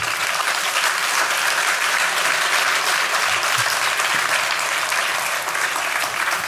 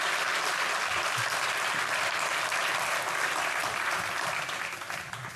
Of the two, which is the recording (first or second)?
first